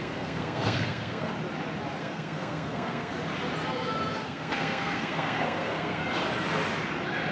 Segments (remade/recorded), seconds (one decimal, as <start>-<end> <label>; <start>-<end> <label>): 0.0-1.3 remade; 1.3-2.0 recorded; 2.0-3.1 remade; 3.1-4.1 recorded; 4.1-6.0 remade; 6.0-7.3 recorded